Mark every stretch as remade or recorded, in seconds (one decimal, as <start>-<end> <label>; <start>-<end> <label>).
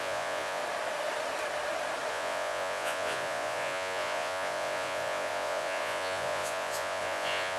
0.0-0.6 remade; 0.6-2.1 recorded; 2.1-7.6 remade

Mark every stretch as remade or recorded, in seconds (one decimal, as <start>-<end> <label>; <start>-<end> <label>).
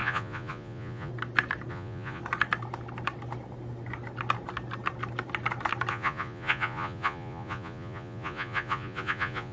0.0-1.1 remade; 1.1-1.7 recorded; 1.7-2.2 remade; 2.2-5.9 recorded; 5.9-9.5 remade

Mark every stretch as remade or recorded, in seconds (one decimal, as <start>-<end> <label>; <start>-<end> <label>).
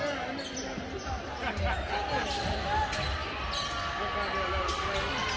0.0-5.4 recorded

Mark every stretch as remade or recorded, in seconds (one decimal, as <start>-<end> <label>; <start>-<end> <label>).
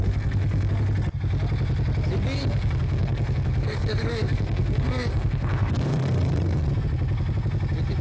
0.0-0.7 remade; 0.7-2.4 recorded; 2.4-6.7 remade; 6.7-8.0 recorded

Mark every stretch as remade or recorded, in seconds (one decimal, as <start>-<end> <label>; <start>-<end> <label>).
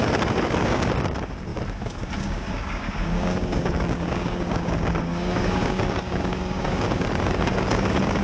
0.0-8.2 remade